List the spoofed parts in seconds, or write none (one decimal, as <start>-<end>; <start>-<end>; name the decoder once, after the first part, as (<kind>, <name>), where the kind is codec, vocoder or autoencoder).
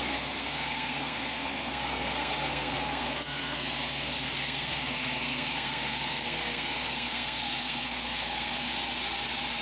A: 0.0-8.7 (codec, SNAC)